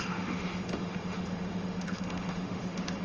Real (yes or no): no